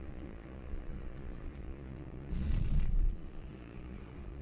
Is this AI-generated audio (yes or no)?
yes